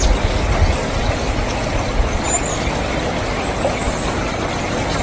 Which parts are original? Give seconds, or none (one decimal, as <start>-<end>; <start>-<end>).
0.0-5.0